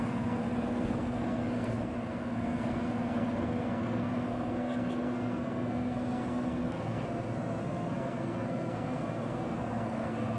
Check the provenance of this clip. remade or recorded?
remade